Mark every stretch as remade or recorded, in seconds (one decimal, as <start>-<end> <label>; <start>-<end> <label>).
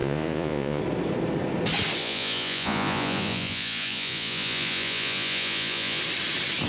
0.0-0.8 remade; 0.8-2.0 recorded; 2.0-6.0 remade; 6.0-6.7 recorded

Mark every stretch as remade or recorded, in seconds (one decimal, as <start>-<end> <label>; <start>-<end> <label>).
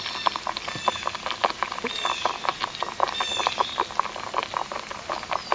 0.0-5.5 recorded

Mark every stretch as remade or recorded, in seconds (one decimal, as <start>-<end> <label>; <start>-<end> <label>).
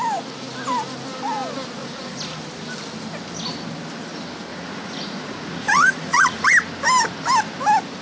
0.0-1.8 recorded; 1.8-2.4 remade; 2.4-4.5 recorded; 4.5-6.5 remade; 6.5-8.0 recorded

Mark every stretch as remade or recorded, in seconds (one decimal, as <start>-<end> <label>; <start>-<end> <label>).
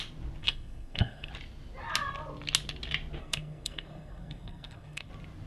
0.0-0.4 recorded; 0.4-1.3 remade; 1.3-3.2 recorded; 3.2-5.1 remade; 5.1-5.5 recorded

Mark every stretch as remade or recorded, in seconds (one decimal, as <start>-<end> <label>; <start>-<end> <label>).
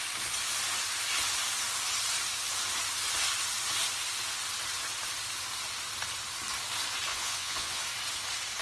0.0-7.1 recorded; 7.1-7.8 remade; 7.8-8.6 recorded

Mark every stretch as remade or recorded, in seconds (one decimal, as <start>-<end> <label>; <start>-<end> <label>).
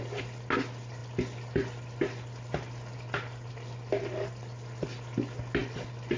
0.0-6.2 recorded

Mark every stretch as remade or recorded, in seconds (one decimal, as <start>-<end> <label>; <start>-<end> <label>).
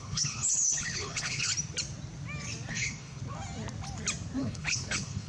0.0-1.5 remade; 1.5-2.7 recorded; 2.7-3.2 remade; 3.2-4.4 recorded; 4.4-5.3 remade